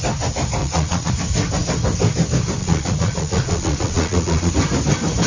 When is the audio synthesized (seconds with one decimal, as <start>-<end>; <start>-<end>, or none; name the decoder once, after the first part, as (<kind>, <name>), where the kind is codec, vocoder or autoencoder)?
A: 0.6-1.1 (vocoder, Vocos); 2.6-4.5